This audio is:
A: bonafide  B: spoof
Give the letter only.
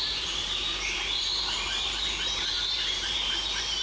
B